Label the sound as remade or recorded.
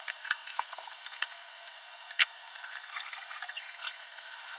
remade